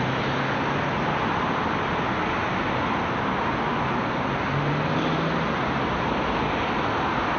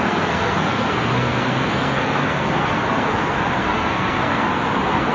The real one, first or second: first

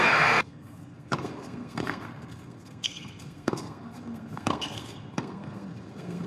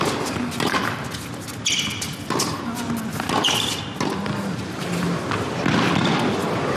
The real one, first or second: second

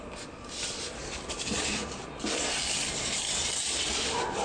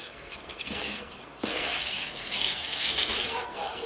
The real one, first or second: first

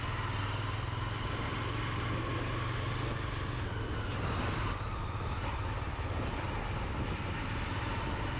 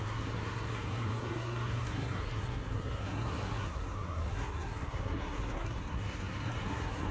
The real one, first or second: first